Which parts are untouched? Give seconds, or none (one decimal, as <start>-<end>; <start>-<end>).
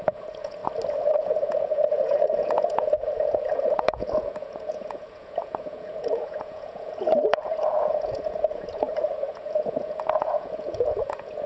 0.6-1.1